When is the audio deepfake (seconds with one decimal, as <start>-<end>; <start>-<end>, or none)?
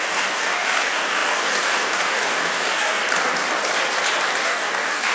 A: 0.0-3.0; 4.4-5.1